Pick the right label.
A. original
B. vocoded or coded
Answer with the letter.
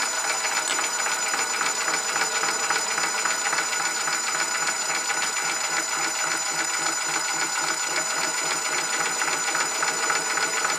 A